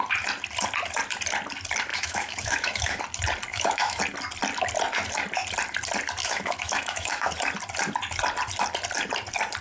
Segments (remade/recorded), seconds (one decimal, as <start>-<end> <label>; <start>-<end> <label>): 0.0-1.9 recorded; 1.9-3.0 remade; 3.0-3.5 recorded; 3.5-4.0 remade; 4.0-6.2 recorded; 6.2-7.3 remade; 7.3-9.6 recorded